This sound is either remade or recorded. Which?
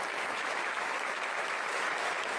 remade